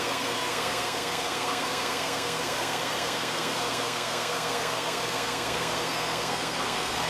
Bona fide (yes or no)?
no